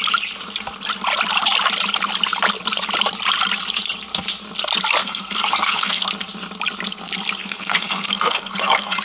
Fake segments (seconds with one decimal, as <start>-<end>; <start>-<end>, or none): 5.0-6.1; 7.4-9.0